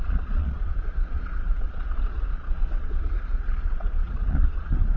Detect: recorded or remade remade